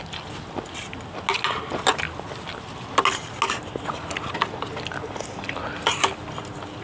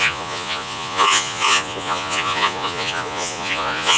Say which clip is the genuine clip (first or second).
first